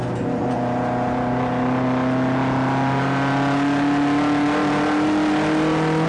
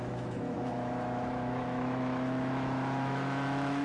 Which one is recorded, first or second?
first